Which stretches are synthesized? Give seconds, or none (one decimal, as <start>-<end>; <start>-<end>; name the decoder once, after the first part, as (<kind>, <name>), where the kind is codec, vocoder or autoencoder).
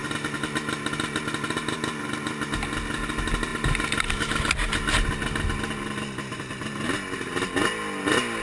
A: none